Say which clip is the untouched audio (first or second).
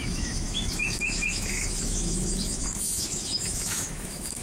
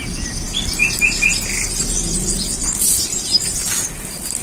second